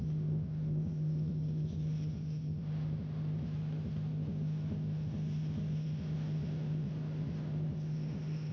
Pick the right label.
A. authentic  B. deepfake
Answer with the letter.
A